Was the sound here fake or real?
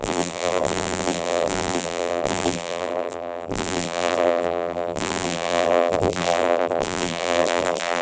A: fake